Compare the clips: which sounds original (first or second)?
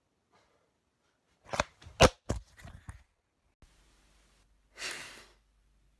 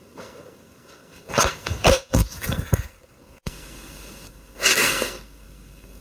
first